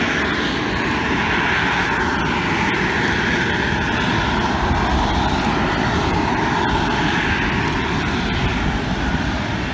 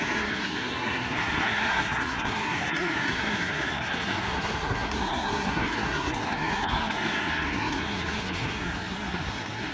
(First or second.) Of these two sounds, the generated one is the second